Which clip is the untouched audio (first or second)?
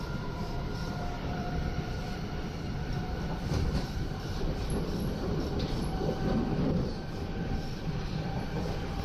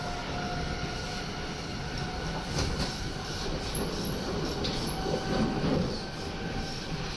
second